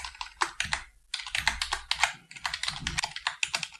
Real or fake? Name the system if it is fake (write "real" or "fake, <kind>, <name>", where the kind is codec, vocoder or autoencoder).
real